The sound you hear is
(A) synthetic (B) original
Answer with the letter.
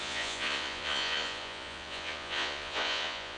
A